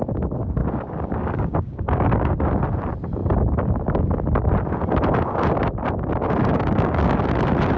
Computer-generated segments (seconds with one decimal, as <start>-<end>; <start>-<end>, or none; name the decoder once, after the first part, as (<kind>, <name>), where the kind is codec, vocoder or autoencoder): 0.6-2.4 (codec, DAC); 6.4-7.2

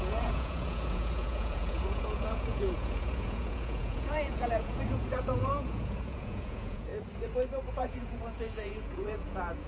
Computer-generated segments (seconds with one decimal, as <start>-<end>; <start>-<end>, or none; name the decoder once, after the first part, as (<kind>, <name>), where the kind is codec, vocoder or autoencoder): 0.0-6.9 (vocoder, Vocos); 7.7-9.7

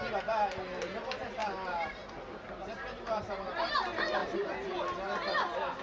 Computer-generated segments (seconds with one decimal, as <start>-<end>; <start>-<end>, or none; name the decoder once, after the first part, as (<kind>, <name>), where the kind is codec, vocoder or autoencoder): 1.4-3.5 (vocoder, BigVGAN v2); 4.2-4.7

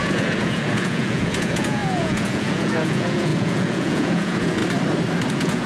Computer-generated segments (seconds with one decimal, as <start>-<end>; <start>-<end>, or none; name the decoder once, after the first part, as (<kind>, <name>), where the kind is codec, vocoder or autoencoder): 0.0-4.6 (vocoder, Vocos); 5.3-5.7

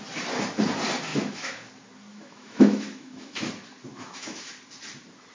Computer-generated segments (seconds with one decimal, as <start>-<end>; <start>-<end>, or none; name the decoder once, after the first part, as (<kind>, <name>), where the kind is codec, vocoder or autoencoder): 1.1-1.7 (autoencoder, DAC-VAE); 2.1-3.5; 3.9-4.5